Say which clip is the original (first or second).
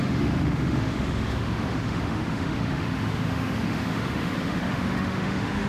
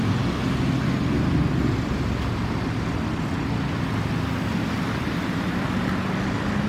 second